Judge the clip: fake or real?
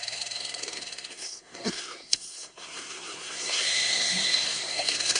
fake